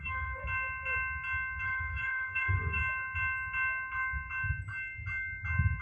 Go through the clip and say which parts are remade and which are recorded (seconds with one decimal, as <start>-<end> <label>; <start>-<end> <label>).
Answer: 0.0-0.4 remade; 0.4-1.6 recorded; 1.6-2.8 remade; 2.8-5.8 recorded